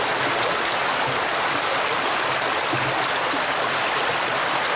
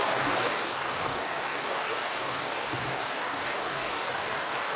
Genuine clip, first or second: first